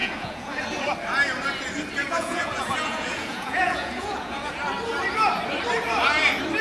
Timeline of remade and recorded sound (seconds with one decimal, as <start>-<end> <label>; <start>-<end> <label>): 0.0-0.6 remade; 0.6-2.0 recorded; 2.0-4.5 remade; 4.5-6.6 recorded